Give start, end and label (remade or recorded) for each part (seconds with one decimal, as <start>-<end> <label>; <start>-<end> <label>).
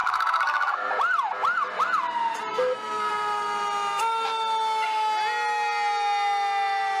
0.0-0.9 remade; 0.9-2.5 recorded; 2.5-3.1 remade; 3.1-7.0 recorded